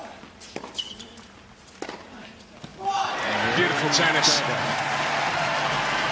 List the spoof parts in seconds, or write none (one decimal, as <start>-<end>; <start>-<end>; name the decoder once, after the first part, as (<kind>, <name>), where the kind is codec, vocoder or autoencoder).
none